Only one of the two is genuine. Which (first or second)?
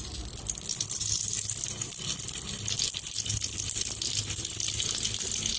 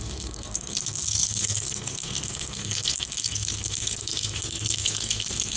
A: first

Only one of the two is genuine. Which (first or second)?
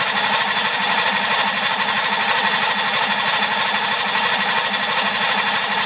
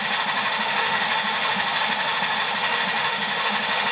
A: first